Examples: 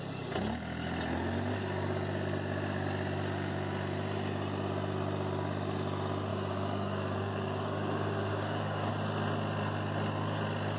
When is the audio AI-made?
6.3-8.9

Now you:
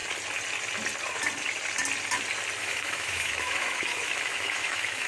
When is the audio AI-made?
2.6-5.1